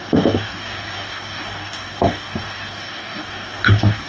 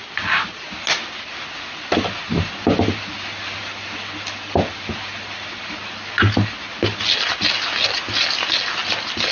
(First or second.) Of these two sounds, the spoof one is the first